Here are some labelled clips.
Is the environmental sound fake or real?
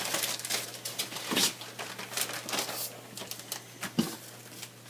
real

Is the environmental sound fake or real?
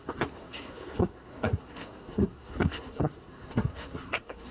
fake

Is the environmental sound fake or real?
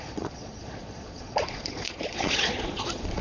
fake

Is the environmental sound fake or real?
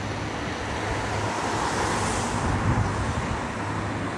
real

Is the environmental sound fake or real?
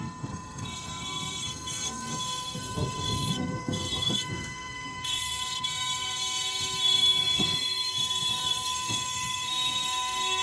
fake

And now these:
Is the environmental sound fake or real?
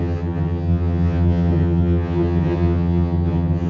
fake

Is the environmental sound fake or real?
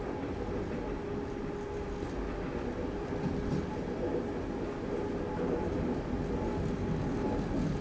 real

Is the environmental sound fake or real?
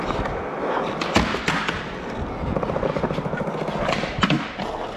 real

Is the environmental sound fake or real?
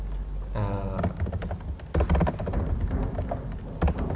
real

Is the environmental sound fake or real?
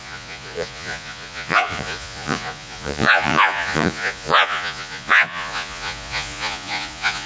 fake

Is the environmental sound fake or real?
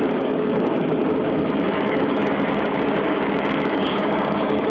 fake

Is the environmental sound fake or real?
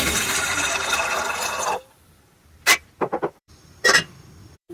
fake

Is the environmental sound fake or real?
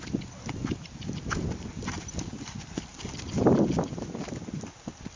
real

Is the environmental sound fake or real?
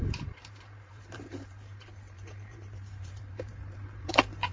fake